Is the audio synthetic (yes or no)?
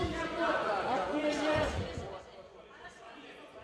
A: yes